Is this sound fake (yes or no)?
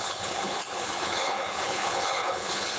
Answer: yes